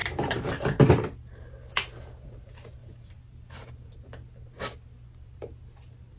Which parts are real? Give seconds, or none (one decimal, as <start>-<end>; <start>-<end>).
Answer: 0.9-2.8; 3.7-6.2